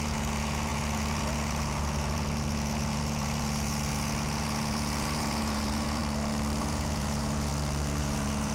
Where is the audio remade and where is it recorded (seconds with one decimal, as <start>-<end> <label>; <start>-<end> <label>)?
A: 0.0-6.0 remade; 6.0-6.6 recorded; 6.6-7.5 remade; 7.5-8.0 recorded; 8.0-8.5 remade